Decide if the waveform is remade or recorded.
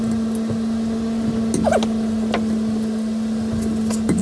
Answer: recorded